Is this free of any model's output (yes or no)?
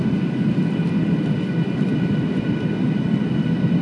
yes